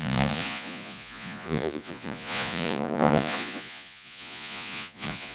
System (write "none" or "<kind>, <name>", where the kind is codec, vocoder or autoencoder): vocoder, Vocos